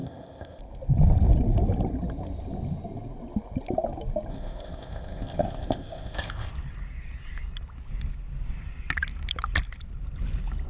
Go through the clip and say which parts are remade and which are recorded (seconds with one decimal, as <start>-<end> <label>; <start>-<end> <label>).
0.0-0.6 remade; 0.6-4.3 recorded; 4.3-6.5 remade; 6.5-10.7 recorded